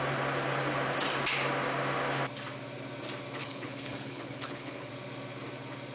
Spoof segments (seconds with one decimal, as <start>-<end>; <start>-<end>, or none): 3.4-4.9